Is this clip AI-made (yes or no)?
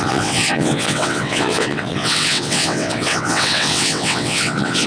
yes